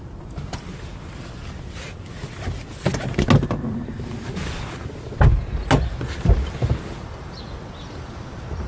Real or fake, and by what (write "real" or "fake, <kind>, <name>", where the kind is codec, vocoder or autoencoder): real